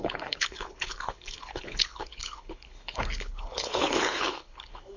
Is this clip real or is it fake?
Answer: fake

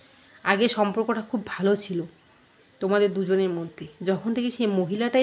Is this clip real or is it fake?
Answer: real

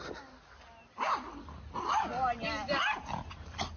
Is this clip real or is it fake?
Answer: real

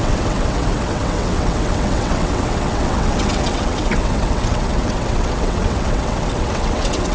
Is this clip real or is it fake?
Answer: fake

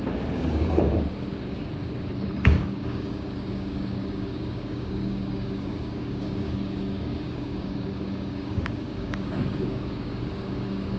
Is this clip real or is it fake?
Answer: fake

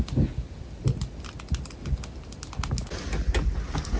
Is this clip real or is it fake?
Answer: real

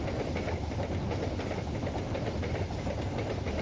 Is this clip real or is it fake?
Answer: real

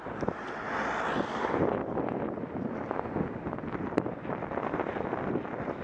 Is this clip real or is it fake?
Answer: real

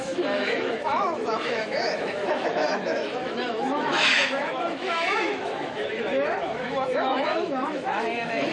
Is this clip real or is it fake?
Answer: fake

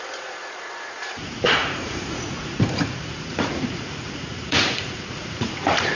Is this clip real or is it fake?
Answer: fake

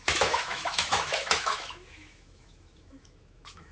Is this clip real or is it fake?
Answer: fake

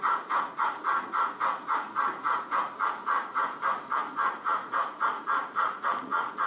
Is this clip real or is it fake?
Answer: fake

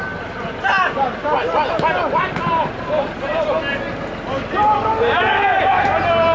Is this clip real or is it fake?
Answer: real